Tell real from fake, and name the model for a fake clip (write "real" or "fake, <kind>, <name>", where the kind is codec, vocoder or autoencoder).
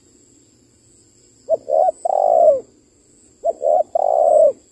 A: real